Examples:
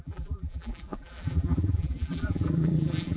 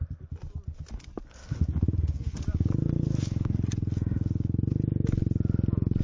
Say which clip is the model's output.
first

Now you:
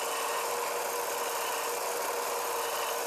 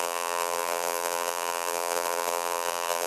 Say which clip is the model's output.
second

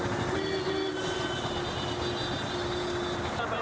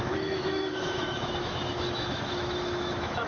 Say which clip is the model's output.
second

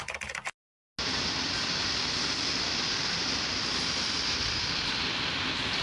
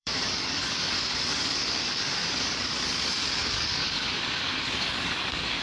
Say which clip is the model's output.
second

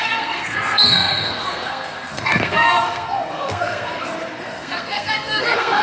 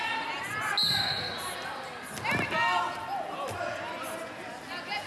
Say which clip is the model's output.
first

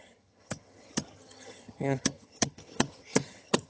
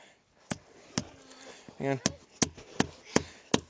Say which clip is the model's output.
first